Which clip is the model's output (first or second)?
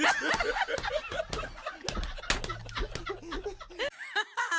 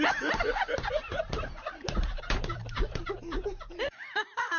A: second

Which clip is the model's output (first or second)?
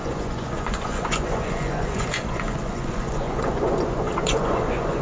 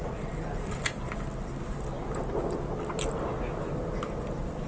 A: first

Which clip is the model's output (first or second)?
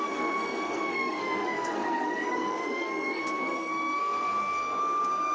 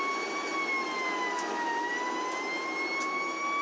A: first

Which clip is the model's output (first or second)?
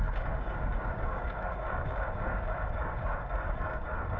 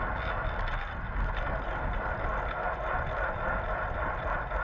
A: first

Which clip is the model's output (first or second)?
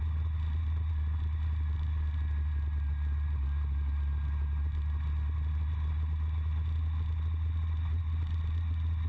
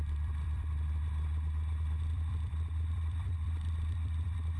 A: second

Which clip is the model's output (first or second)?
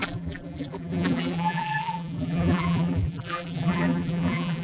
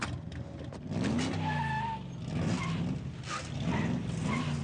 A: first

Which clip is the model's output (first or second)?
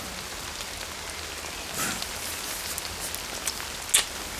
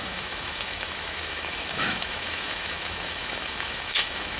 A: second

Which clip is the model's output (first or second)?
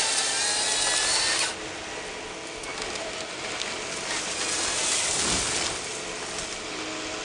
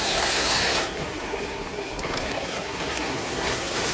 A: second